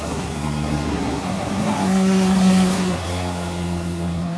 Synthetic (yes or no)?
yes